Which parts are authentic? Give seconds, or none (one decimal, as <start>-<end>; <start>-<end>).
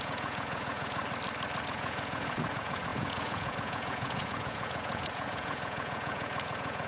1.0-1.7